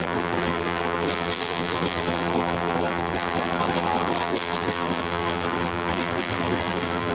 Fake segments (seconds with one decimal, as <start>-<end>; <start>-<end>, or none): 0.0-7.1